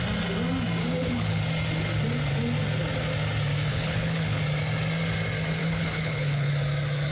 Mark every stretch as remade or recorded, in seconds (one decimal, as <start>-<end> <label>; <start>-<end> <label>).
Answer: 0.0-0.8 recorded; 0.8-1.4 remade; 1.4-3.7 recorded; 3.7-4.4 remade; 4.4-5.6 recorded; 5.6-6.5 remade; 6.5-7.1 recorded